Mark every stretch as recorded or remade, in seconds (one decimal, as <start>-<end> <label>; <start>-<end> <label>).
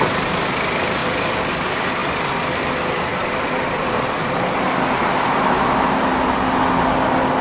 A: 0.0-6.1 remade; 6.1-7.4 recorded